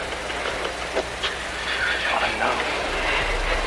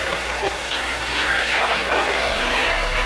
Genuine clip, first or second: first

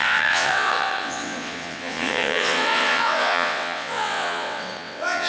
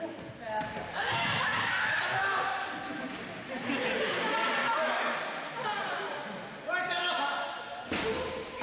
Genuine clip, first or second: second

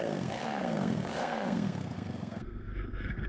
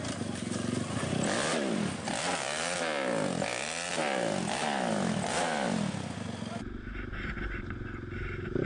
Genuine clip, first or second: second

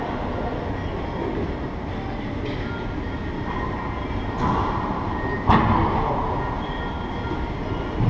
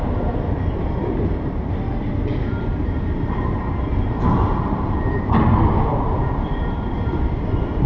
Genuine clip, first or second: first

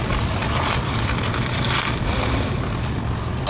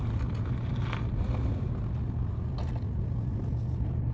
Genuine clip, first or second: second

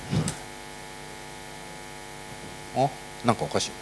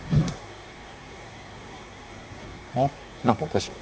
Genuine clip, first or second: first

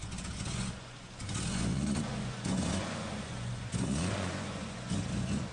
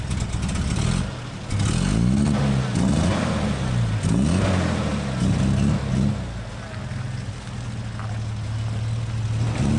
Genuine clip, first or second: second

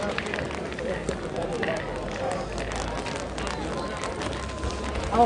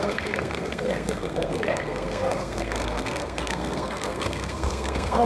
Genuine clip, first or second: first